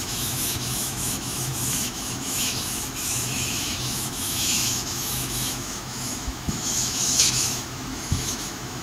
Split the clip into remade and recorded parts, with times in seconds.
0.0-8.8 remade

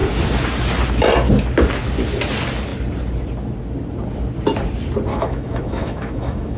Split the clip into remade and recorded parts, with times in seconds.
0.0-5.1 recorded; 5.1-6.6 remade

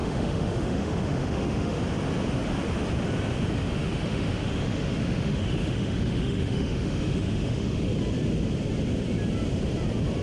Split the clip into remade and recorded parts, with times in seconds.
0.0-1.8 remade; 1.8-3.8 recorded; 3.8-7.9 remade; 7.9-10.2 recorded

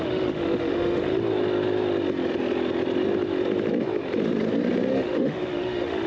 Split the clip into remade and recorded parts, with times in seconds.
0.0-1.2 remade; 1.2-4.9 recorded; 4.9-6.1 remade

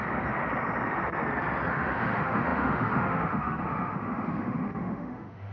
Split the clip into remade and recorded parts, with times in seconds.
0.0-1.7 recorded; 1.7-5.5 remade